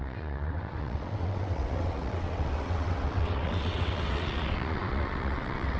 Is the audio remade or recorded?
remade